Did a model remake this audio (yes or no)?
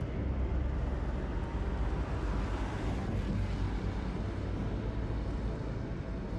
no